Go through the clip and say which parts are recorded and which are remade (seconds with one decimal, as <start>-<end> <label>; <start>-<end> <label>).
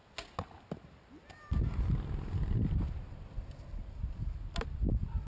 0.0-5.3 recorded